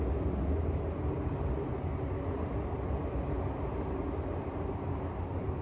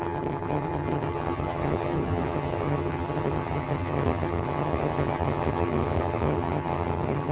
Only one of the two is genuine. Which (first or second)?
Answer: first